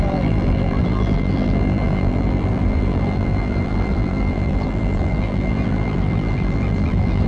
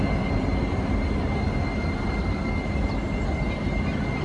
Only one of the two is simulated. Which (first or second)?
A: first